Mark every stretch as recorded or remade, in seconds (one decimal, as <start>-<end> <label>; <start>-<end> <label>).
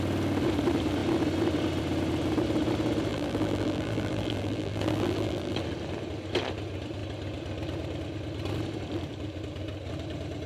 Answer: 0.0-3.1 recorded; 3.1-5.6 remade; 5.6-10.5 recorded